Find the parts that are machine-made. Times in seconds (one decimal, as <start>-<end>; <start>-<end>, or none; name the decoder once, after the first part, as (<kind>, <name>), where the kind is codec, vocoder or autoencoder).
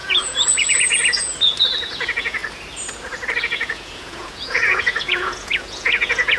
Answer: 0.0-1.3 (vocoder, Vocos); 1.8-2.4; 3.4-6.4